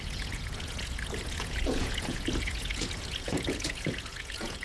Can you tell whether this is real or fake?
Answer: fake